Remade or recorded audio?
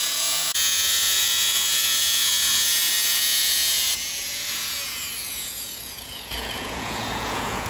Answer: remade